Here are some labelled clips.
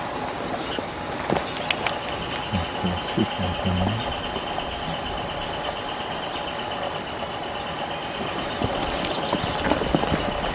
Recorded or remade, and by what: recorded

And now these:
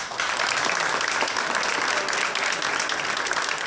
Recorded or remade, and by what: recorded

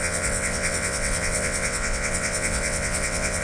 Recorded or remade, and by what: remade, vocoder, WaveNeXt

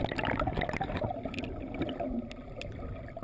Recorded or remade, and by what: recorded